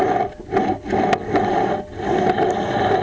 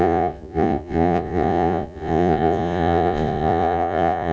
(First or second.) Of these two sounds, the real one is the first